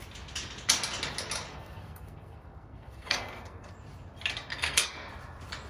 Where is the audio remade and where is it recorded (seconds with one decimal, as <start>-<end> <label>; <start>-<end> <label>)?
0.0-1.5 recorded; 1.5-3.7 remade; 3.7-4.5 recorded; 4.5-5.1 remade; 5.1-5.7 recorded